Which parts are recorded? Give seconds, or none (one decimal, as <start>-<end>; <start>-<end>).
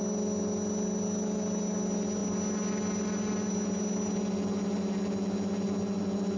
0.0-6.4